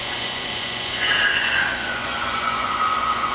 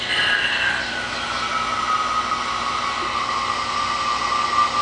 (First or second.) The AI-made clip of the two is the first